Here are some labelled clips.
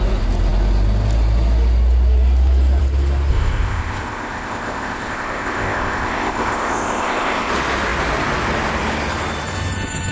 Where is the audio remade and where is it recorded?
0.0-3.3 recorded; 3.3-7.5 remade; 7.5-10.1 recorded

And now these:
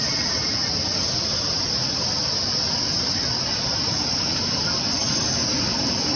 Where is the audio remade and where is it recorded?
0.0-6.2 recorded

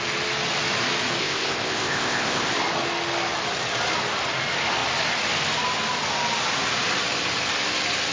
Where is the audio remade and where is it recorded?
0.0-1.2 recorded; 1.2-2.5 remade; 2.5-8.1 recorded

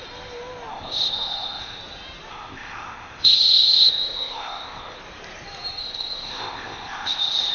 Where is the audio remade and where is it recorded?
0.0-0.7 recorded; 0.7-1.8 remade; 1.8-2.3 recorded; 2.3-5.0 remade; 5.0-5.8 recorded; 5.8-7.5 remade

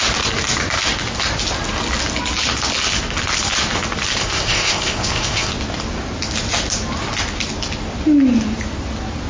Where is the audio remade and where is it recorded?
0.0-4.2 recorded; 4.2-5.5 remade; 5.5-9.3 recorded

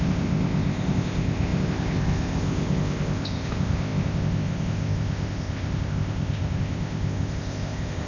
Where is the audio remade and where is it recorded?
0.0-8.1 remade

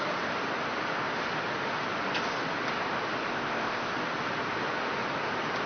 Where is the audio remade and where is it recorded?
0.0-3.3 recorded; 3.3-3.9 remade; 3.9-5.7 recorded